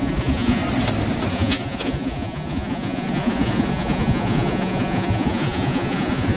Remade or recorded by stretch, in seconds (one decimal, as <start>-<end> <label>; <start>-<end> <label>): 0.0-0.6 remade; 0.6-1.3 recorded; 1.3-6.4 remade